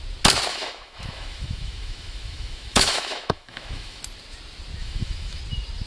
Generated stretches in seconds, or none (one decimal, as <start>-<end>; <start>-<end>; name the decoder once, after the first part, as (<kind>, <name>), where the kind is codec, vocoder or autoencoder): 0.5-4.0 (autoencoder, DAC-VAE); 4.8-5.4